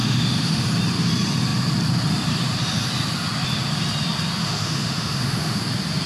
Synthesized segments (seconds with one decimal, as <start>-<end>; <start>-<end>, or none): 0.0-0.6; 4.4-5.6